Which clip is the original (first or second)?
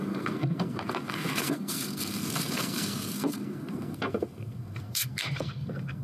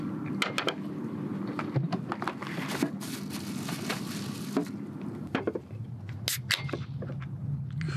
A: second